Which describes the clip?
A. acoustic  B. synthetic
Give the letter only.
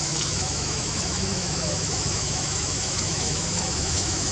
B